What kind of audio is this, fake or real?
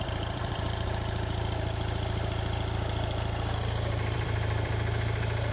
fake